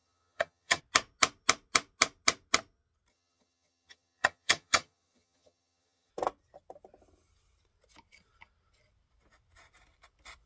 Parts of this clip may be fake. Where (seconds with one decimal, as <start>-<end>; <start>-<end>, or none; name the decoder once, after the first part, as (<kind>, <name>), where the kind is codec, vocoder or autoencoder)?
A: 0.0-0.8 (vocoder, HiFi-GAN); 3.1-6.1